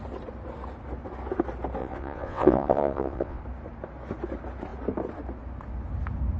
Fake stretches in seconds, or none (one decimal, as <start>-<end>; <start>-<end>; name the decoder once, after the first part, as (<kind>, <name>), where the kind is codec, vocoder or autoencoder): 1.8-3.4 (vocoder, WaveNeXt)